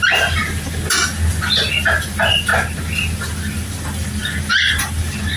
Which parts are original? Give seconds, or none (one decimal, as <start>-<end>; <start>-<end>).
0.4-2.1; 2.5-3.2